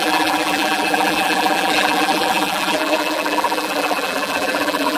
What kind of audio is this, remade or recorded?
remade